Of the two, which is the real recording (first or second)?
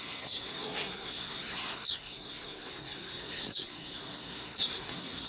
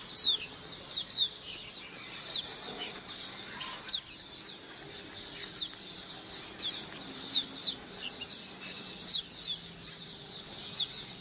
second